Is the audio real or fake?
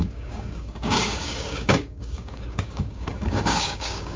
fake